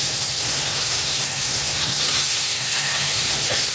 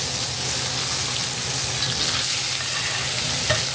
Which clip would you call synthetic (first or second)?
first